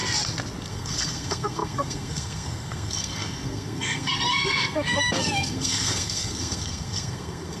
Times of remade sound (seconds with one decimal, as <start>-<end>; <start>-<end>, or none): 0.7-7.6